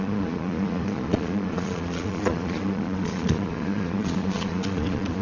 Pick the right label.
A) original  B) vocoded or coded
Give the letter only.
B